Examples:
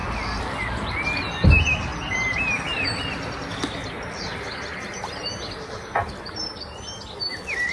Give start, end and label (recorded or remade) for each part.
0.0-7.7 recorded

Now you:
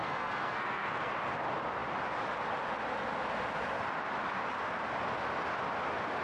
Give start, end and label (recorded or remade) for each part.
0.0-1.1 remade; 1.1-6.2 recorded

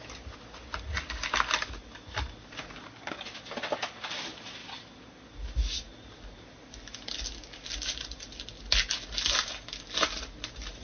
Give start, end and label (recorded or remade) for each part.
0.0-10.8 recorded

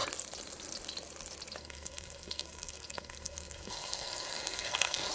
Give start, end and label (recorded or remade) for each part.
0.0-1.6 recorded; 1.6-5.1 remade

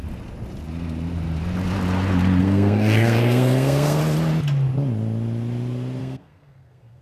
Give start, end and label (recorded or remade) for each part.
0.0-2.4 recorded; 2.4-4.0 remade; 4.0-6.0 recorded; 6.0-7.0 remade